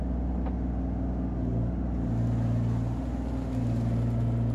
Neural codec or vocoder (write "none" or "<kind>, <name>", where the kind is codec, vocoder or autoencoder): none